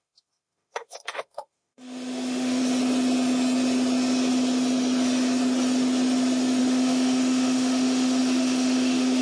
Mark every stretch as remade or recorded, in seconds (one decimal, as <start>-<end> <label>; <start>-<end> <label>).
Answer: 0.0-2.6 remade; 2.6-6.6 recorded; 6.6-9.2 remade